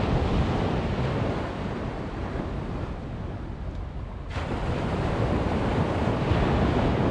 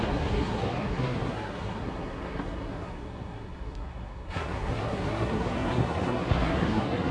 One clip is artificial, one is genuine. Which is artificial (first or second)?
second